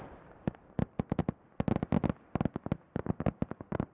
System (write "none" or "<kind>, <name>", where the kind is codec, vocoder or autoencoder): none